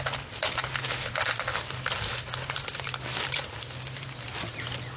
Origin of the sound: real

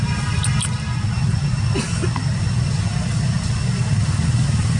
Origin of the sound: real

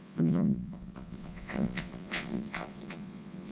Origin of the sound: fake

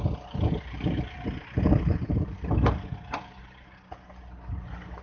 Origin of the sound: real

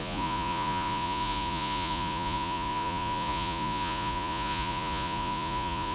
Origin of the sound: fake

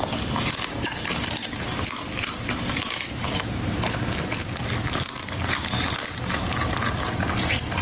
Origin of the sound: real